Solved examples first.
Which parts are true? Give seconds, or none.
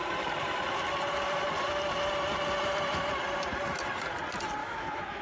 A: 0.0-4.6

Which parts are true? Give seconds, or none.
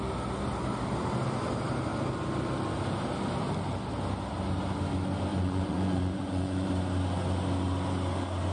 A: 0.0-5.3; 6.7-8.5